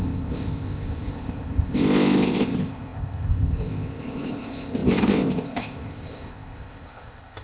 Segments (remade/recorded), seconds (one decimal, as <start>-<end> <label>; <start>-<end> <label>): 0.0-7.4 remade